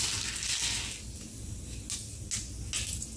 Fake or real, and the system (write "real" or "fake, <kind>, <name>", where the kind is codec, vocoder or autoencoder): real